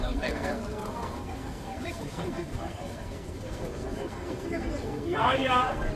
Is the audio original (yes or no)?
no